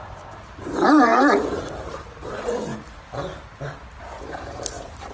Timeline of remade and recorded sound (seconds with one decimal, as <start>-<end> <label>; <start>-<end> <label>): 0.0-2.7 remade; 2.7-4.2 recorded; 4.2-5.1 remade